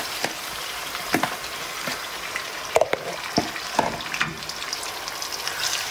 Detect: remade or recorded remade